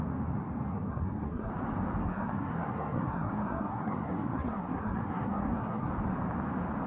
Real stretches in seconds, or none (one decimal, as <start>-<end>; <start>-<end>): 0.0-0.7; 1.5-2.0; 5.9-6.9